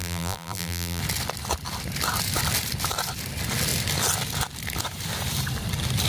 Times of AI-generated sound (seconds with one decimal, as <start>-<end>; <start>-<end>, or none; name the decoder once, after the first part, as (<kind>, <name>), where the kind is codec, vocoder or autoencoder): 0.0-1.0 (vocoder, BigVGAN v2)